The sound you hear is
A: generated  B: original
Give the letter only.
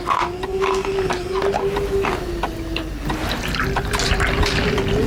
B